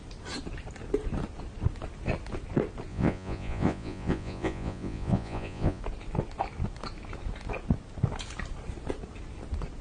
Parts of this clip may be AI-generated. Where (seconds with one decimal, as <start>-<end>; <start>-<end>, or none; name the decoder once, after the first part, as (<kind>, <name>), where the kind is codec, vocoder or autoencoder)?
2.9-5.8 (vocoder, Vocos)